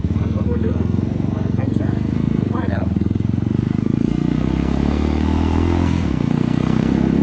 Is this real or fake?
fake